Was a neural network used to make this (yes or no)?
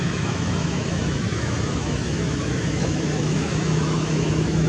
yes